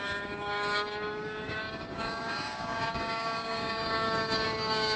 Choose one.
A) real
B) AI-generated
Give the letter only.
B